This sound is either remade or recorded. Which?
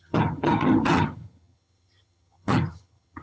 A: remade